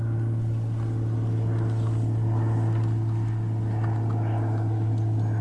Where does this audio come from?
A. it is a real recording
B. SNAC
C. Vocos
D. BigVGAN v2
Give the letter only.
A